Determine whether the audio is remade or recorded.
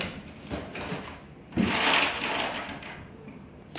recorded